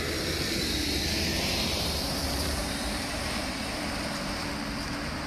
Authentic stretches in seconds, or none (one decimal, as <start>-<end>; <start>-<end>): 0.0-1.3; 4.5-5.3